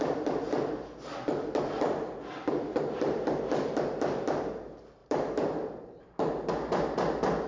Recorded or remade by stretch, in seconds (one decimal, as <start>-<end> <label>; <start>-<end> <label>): 0.0-2.7 recorded; 2.7-3.3 remade; 3.3-5.0 recorded; 5.0-6.5 remade; 6.5-7.5 recorded